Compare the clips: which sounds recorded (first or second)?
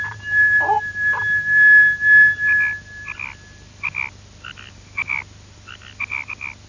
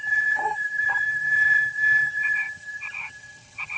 first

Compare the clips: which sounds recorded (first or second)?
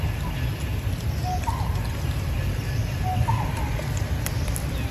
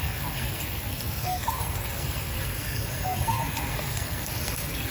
first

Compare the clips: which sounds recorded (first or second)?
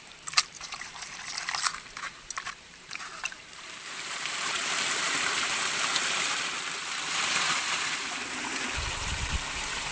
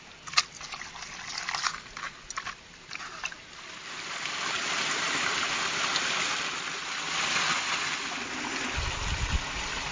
second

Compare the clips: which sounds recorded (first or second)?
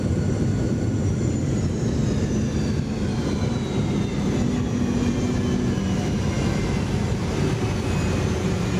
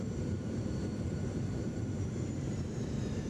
first